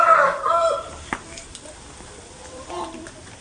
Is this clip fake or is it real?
fake